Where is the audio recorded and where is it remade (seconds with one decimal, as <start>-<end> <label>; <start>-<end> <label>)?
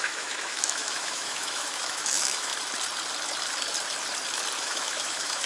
0.0-2.5 remade; 2.5-4.6 recorded; 4.6-5.5 remade